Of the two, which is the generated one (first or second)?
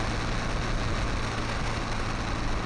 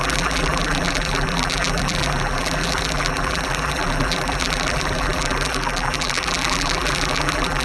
second